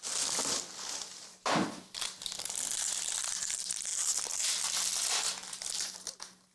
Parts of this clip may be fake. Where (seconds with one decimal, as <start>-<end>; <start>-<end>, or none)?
none